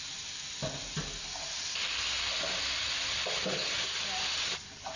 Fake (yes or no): no